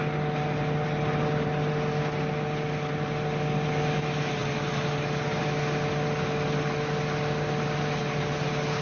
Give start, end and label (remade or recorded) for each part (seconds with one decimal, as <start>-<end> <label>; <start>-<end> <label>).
0.0-8.8 recorded